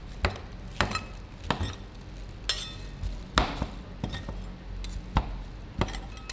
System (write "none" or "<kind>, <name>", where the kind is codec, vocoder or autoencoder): none